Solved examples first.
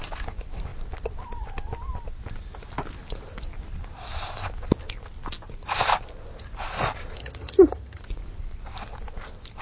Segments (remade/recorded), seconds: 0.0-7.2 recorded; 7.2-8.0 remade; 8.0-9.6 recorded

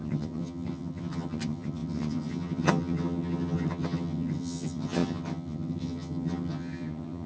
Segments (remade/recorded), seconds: 0.0-7.3 remade